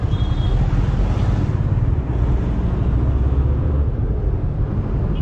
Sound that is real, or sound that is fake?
real